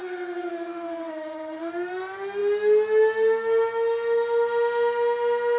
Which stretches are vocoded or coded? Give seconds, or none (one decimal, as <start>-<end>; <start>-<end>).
0.0-1.7